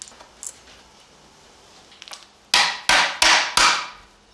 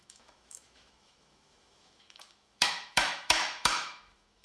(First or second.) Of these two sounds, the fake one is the second